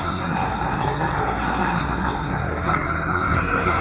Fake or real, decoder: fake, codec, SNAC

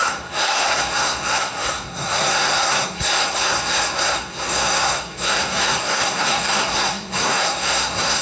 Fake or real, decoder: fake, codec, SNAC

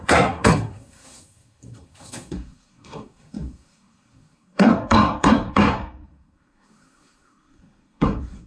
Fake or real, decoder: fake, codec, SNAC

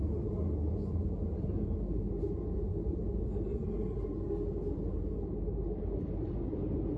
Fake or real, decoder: real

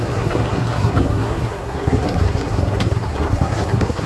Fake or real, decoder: fake, codec, SNAC